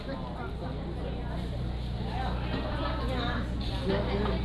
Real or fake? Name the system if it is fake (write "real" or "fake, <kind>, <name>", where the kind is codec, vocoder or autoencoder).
real